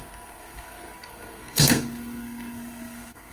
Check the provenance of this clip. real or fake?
fake